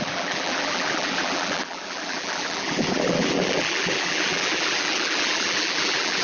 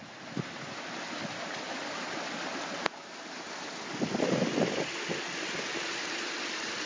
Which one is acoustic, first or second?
second